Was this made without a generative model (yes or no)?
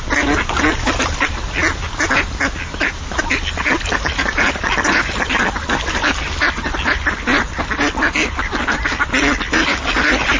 yes